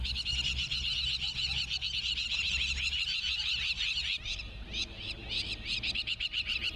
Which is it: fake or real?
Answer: real